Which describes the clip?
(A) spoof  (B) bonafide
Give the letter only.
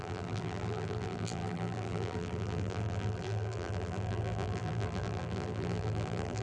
A